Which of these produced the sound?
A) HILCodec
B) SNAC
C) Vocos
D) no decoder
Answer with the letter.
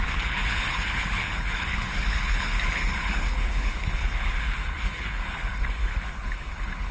A